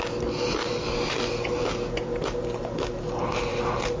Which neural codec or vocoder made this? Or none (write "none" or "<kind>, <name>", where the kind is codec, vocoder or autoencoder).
none